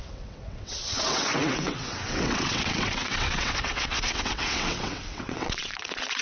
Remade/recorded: remade